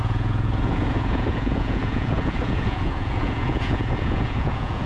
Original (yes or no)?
no